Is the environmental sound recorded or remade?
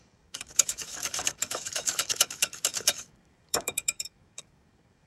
remade